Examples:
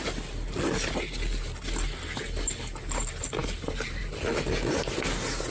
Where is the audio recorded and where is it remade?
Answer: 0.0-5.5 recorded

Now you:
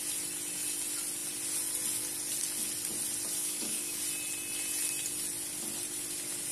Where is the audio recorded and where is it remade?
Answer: 0.0-3.4 recorded; 3.4-4.0 remade; 4.0-6.5 recorded

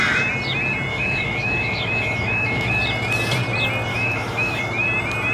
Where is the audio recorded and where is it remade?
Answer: 0.0-0.9 recorded; 0.9-2.7 remade; 2.7-3.9 recorded; 3.9-4.6 remade; 4.6-5.3 recorded

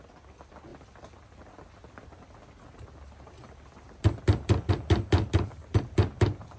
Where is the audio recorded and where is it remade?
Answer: 0.0-6.6 recorded

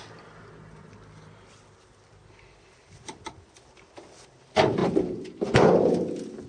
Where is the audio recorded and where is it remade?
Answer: 0.0-6.5 recorded

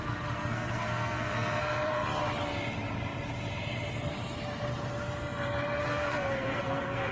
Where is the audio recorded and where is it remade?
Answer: 0.0-2.0 remade; 2.0-5.8 recorded; 5.8-7.1 remade